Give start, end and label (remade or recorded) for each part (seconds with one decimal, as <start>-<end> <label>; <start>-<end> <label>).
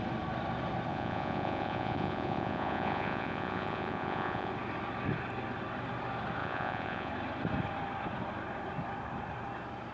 0.0-0.9 recorded; 0.9-4.5 remade; 4.5-6.4 recorded; 6.4-7.1 remade; 7.1-9.9 recorded